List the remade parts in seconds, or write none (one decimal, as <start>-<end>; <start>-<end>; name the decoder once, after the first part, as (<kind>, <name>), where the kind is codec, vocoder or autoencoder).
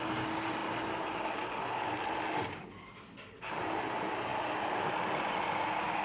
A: none